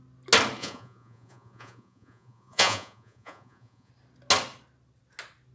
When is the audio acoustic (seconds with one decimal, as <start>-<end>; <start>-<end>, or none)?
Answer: 0.0-0.6; 3.9-5.5